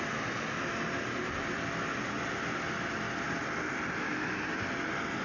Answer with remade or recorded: recorded